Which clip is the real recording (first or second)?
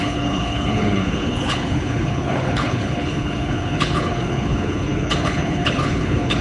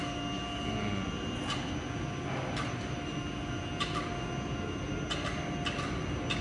second